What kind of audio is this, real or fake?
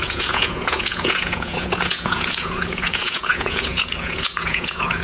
fake